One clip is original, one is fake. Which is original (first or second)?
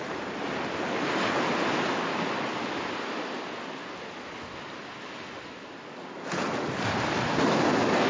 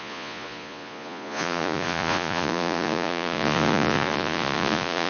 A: first